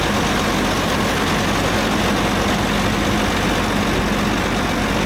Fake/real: real